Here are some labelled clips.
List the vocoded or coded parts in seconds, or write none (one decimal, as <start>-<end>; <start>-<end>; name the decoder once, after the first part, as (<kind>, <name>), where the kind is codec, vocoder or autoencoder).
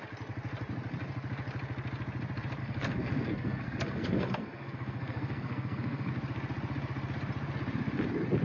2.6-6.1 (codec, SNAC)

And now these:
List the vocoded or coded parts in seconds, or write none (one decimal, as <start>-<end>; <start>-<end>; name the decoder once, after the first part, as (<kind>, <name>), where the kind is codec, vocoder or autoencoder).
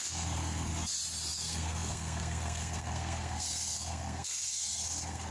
0.0-0.7 (codec, SNAC); 1.3-5.3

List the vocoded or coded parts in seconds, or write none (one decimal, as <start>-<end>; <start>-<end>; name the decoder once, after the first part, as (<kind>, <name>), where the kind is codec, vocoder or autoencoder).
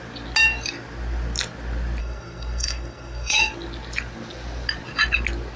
2.0-3.5 (codec, SNAC)